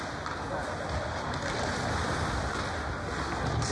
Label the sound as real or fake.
real